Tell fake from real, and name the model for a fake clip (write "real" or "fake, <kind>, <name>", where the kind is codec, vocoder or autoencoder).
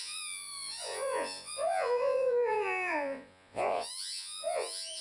fake, vocoder, Vocos